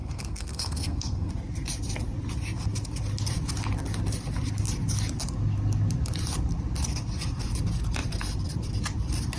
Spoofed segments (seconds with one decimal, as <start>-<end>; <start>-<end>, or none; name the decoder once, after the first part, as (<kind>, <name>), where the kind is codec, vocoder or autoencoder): 0.0-1.3 (codec, SNAC)